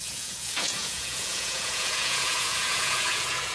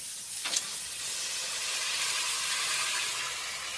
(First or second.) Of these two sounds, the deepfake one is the first